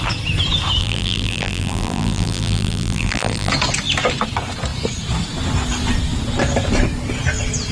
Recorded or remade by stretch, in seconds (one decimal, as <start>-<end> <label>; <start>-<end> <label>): 0.0-0.8 recorded; 0.8-3.5 remade; 3.5-7.7 recorded